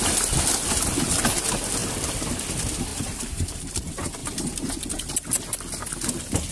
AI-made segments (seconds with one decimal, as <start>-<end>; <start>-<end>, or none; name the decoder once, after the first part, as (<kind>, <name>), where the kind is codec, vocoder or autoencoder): 2.9-3.6 (vocoder, BigVGAN v2); 4.2-5.1